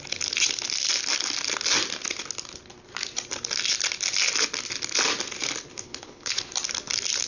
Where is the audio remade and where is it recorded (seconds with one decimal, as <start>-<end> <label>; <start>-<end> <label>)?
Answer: 0.0-5.7 recorded; 5.7-6.5 remade; 6.5-7.3 recorded